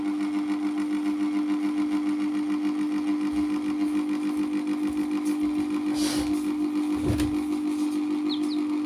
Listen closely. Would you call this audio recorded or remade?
recorded